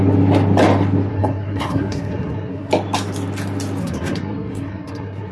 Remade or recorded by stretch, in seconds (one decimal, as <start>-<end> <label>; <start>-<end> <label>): 0.0-1.1 recorded; 1.1-2.7 remade; 2.7-3.8 recorded; 3.8-5.3 remade